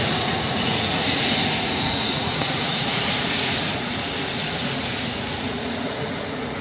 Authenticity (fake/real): fake